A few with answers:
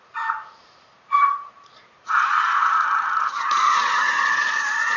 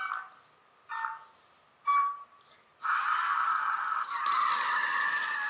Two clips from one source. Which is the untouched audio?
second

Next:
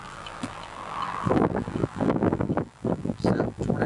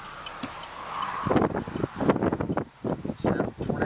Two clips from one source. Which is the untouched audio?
second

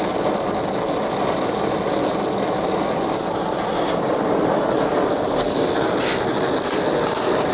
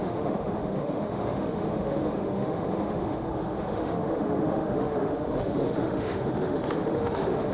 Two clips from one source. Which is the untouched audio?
first